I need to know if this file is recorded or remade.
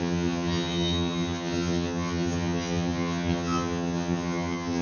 remade